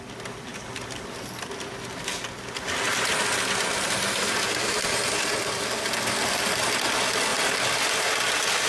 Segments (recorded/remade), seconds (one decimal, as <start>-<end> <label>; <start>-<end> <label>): 0.0-8.7 recorded